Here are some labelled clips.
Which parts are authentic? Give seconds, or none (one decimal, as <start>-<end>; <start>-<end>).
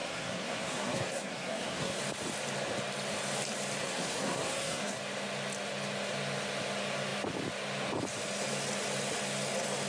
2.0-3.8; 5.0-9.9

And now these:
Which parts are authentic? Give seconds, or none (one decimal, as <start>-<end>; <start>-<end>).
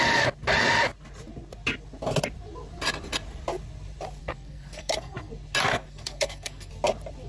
0.0-4.2; 5.3-5.7; 6.7-7.3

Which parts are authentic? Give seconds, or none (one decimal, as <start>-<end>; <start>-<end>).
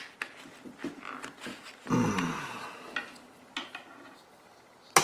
0.0-5.0